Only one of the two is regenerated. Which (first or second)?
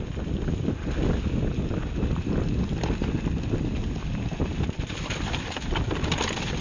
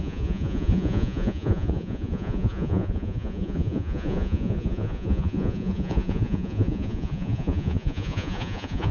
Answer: second